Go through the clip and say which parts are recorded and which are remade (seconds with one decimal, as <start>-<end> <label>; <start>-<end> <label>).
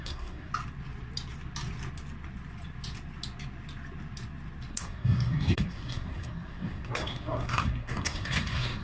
0.0-0.5 remade; 0.5-4.7 recorded; 4.7-8.8 remade